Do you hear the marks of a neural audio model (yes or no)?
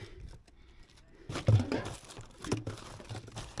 no